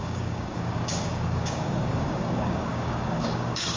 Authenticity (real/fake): fake